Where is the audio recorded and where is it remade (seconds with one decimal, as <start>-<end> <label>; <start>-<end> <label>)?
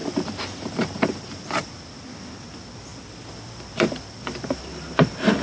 0.0-1.7 remade; 1.7-2.9 recorded; 2.9-4.6 remade; 4.6-5.4 recorded